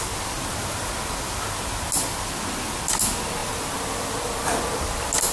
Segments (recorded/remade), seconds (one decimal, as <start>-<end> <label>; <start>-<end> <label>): 0.0-3.4 recorded; 3.4-4.0 remade; 4.0-5.3 recorded